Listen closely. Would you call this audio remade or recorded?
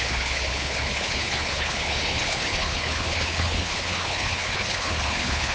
remade